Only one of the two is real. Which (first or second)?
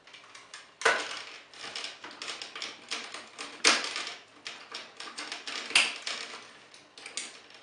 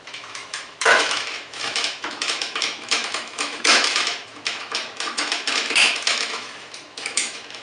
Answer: first